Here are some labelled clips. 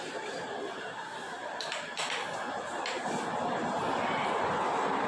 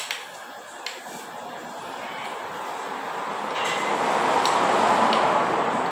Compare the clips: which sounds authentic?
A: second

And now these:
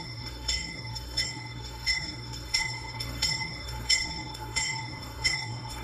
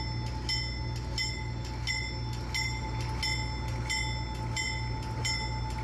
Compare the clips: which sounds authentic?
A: second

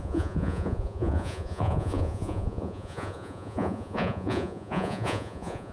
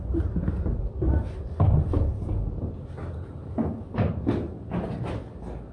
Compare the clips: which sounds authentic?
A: second